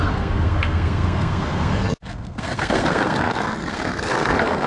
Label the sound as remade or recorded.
remade